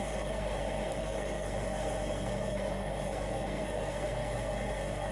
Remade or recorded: remade